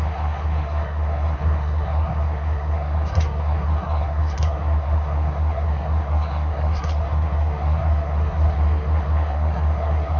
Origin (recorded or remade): remade